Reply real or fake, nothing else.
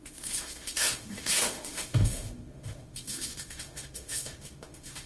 fake